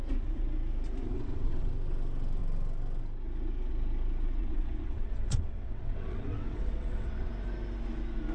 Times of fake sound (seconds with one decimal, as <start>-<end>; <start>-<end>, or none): 1.1-1.7; 4.4-7.3